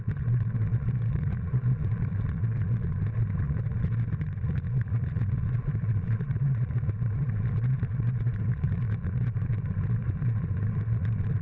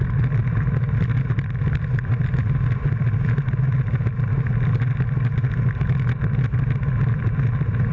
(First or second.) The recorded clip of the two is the second